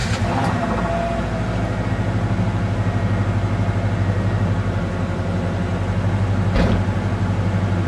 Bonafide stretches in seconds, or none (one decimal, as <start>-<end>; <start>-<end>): 0.0-7.9